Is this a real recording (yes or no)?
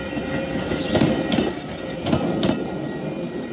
yes